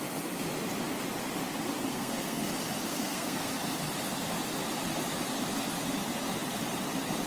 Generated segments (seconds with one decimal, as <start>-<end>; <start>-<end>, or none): 1.9-2.5; 2.9-3.5